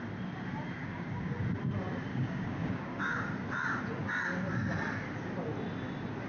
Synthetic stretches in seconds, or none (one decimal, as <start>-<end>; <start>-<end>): 0.8-1.3; 2.1-3.0